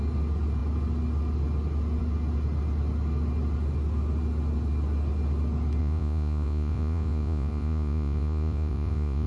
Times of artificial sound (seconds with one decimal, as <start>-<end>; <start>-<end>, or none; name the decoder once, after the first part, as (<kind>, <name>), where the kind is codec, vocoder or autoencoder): 5.8-9.3 (vocoder, Vocos)